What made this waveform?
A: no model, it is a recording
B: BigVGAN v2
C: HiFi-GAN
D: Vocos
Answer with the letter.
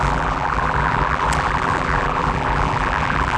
B